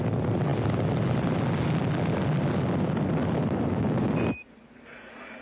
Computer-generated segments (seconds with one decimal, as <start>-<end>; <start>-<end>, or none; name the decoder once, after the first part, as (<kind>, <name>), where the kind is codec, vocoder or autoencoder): none